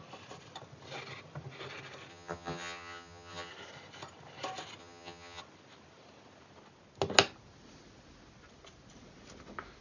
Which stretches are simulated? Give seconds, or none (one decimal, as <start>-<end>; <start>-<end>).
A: 2.1-3.5; 4.8-5.4